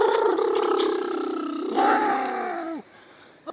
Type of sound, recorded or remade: remade